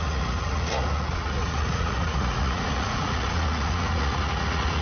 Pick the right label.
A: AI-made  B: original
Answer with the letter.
A